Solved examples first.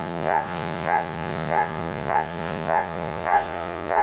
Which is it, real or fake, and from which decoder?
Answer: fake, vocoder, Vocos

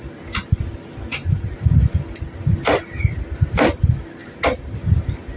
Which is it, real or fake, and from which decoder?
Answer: real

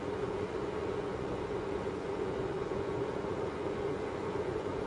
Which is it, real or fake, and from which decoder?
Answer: fake, vocoder, Vocos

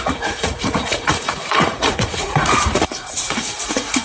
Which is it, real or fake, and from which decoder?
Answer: fake, vocoder, Vocos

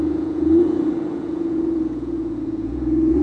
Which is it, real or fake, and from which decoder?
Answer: fake, vocoder, Vocos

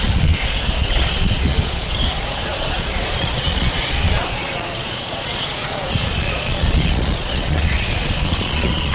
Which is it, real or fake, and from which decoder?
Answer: fake, vocoder, Vocos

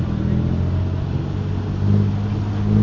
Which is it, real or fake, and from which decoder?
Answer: real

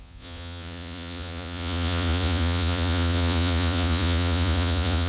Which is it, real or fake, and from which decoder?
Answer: fake, vocoder, Vocos